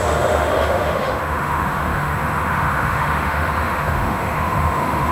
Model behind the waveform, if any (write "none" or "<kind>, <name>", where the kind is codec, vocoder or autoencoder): autoencoder, DAC-VAE